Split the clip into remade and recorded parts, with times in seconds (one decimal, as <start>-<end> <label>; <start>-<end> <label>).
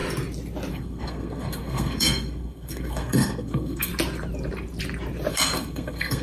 0.0-0.7 recorded; 0.7-3.9 remade; 3.9-5.3 recorded; 5.3-6.2 remade